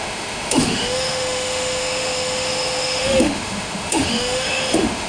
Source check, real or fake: fake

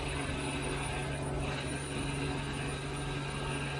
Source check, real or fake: real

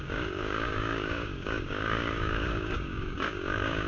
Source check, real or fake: fake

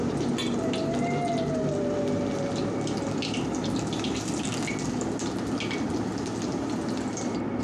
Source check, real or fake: fake